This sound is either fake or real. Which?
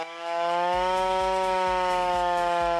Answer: fake